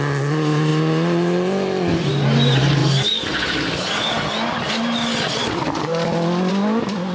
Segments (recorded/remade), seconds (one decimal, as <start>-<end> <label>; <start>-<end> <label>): 0.0-7.1 recorded